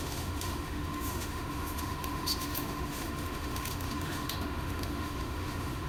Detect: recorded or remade remade